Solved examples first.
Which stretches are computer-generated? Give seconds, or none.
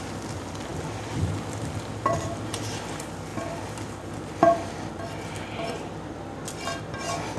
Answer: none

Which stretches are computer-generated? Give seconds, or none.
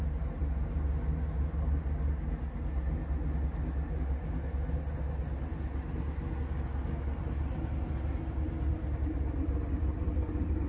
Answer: none